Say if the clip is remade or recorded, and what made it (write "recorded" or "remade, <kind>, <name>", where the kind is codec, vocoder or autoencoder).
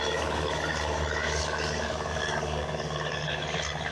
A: remade, codec, DAC